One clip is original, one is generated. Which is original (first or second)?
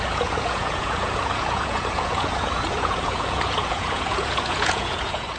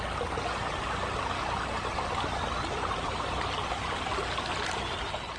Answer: second